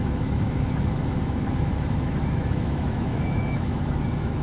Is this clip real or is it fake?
fake